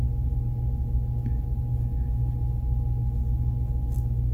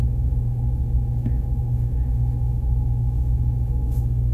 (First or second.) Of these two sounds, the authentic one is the first